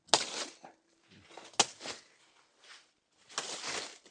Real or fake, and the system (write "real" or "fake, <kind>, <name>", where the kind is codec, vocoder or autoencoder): real